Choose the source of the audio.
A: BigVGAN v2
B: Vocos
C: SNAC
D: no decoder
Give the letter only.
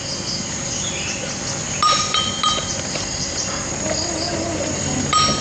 D